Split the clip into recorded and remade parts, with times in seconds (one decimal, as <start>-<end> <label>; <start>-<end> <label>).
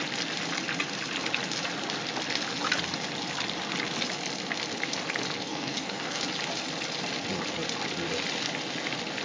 0.0-5.5 recorded; 5.5-6.2 remade; 6.2-9.2 recorded